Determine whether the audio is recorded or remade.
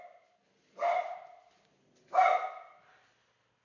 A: recorded